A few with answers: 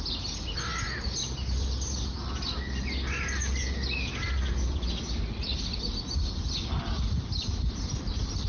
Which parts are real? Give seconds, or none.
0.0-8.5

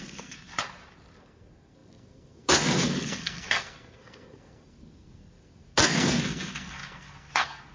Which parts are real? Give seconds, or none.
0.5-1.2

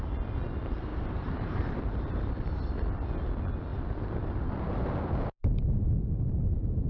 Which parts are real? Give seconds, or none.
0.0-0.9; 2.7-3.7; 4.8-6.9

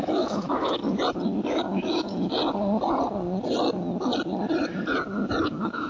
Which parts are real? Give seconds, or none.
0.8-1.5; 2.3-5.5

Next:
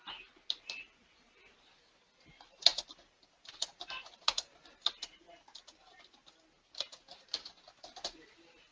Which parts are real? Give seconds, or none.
0.0-8.7

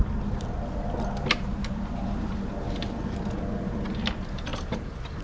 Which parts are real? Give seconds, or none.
0.0-4.5

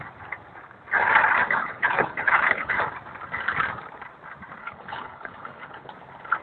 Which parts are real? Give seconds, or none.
0.0-1.6; 2.8-4.6; 5.9-6.4

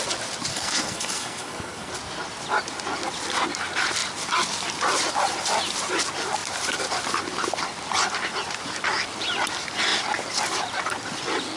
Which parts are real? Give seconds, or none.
0.0-0.5; 1.9-11.6